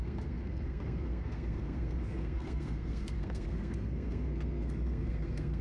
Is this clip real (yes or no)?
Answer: no